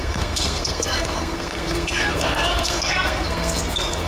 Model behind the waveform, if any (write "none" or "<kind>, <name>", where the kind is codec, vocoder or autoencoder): codec, SNAC